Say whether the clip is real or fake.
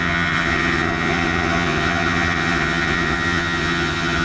fake